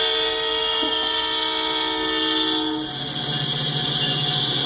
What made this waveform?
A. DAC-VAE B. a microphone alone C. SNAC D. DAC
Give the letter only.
B